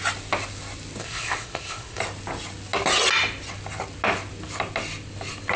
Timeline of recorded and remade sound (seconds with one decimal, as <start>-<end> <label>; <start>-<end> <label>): 0.0-1.0 recorded; 1.0-2.0 remade; 2.0-5.6 recorded